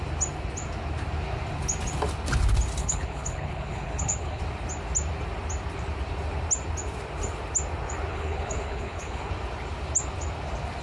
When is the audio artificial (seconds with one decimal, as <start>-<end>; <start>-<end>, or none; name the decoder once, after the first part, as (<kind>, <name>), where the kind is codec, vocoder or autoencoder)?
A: 2.8-4.4 (codec, HILCodec); 8.1-9.3